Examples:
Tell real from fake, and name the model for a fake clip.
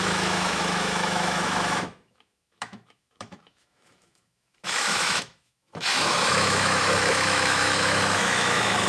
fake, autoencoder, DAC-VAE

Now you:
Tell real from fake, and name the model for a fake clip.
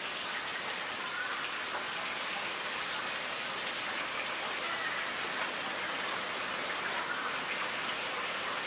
real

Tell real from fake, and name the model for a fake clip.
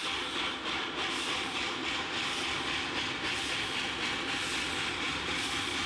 real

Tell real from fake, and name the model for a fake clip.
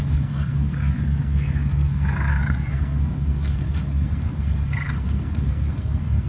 fake, codec, SNAC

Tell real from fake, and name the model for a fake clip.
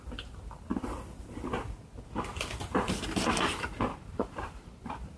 real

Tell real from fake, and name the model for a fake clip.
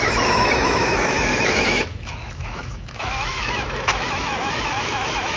fake, autoencoder, DAC-VAE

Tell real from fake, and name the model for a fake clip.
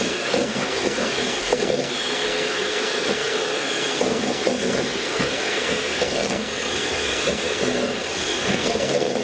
fake, codec, SNAC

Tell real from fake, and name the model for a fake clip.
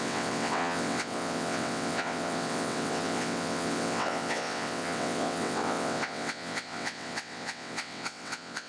fake, vocoder, WaveNeXt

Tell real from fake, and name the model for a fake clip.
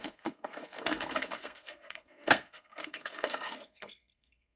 fake, codec, SNAC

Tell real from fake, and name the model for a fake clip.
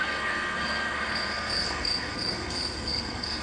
fake, codec, SNAC